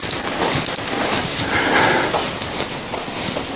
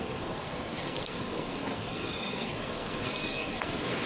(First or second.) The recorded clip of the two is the first